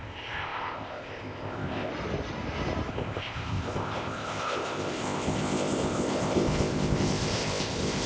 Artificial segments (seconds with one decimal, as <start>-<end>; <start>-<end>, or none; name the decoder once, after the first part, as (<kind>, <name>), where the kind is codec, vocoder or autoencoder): 0.0-1.9 (codec, ZipCodec); 2.9-8.1